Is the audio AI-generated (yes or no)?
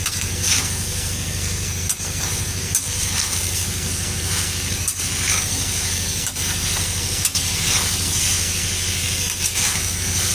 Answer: yes